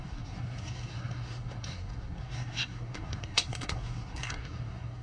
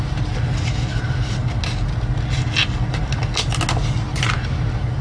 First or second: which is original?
second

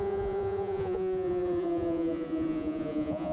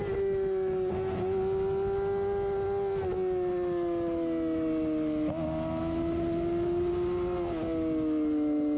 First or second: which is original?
second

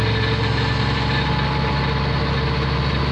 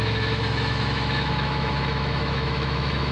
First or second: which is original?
first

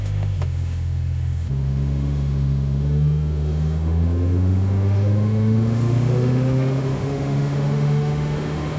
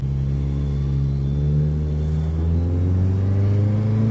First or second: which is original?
second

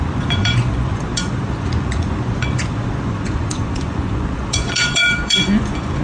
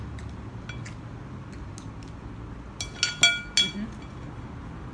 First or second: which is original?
second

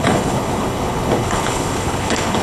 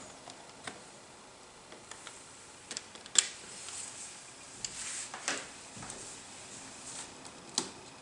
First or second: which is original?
second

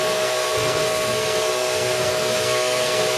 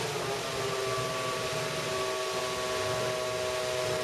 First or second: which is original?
second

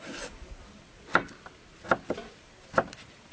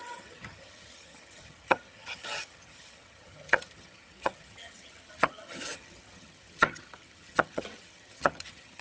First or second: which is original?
first